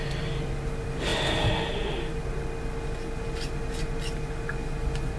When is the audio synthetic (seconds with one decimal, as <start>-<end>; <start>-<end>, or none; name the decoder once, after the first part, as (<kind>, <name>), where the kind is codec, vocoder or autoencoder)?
none